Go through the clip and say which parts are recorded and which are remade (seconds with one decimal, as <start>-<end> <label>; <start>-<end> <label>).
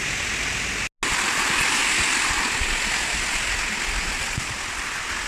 0.0-5.3 recorded